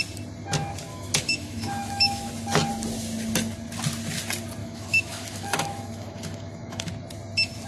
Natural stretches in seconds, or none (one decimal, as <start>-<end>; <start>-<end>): 0.0-0.9; 2.3-4.6; 6.9-7.7